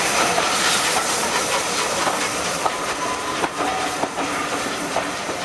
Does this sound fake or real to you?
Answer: fake